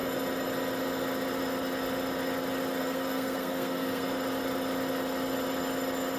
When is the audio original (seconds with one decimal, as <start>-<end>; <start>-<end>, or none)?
0.0-2.8; 4.1-6.2